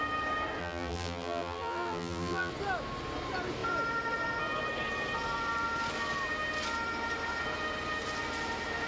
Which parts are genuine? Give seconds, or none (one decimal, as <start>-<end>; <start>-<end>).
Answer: 0.0-0.6; 2.5-8.9